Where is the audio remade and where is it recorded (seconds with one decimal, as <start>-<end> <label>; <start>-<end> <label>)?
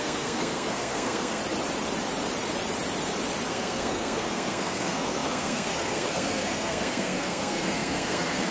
0.0-1.4 remade; 1.4-3.5 recorded; 3.5-8.5 remade